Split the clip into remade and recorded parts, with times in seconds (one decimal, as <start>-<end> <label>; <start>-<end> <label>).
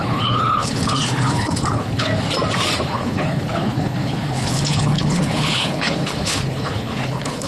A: 0.0-2.1 remade; 2.1-2.8 recorded; 2.8-7.5 remade